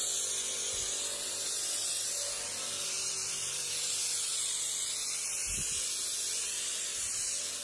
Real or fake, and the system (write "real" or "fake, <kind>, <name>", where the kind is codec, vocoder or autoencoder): real